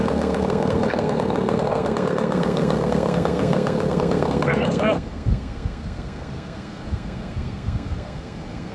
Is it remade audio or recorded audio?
remade